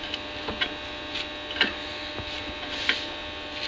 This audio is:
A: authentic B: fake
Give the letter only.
A